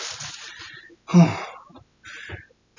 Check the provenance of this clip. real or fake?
real